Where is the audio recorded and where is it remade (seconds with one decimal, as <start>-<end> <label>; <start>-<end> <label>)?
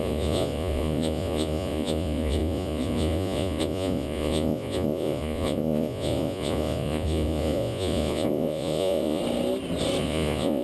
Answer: 0.0-9.2 remade; 9.2-10.0 recorded; 10.0-10.6 remade